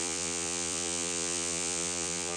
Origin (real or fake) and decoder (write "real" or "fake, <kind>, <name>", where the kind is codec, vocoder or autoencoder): fake, vocoder, Vocos